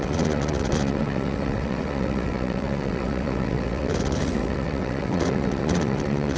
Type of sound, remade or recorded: remade